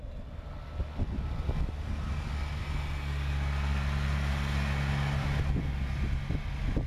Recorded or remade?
recorded